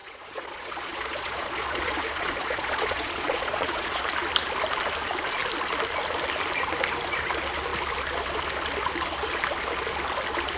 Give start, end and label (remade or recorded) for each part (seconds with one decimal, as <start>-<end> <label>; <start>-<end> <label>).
0.0-4.0 remade; 4.0-10.6 recorded